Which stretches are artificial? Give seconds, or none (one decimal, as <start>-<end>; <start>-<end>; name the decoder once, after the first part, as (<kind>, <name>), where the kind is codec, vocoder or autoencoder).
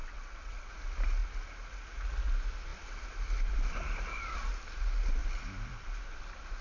0.0-0.7 (vocoder, WaveNeXt)